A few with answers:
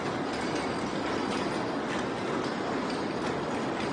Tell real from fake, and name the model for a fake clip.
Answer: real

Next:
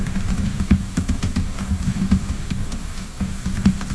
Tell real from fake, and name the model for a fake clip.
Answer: fake, codec, DAC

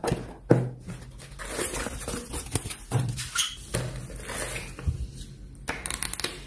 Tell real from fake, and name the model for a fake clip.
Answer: real